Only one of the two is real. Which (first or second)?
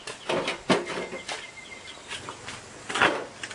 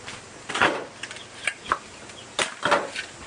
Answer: first